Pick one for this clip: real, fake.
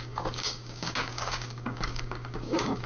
fake